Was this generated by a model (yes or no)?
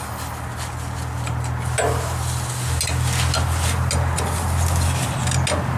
no